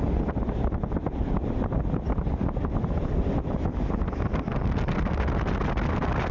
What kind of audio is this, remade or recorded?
recorded